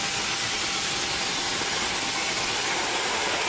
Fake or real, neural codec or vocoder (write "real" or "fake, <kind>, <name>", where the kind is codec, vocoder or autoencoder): real